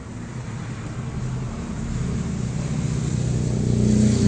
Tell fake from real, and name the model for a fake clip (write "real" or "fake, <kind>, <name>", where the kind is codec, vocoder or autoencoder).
real